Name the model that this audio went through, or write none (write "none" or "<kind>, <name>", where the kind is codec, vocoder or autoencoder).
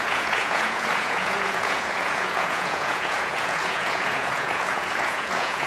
vocoder, Vocos